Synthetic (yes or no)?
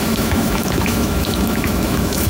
yes